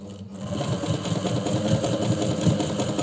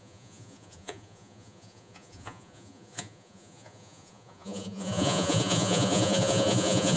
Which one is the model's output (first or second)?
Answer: second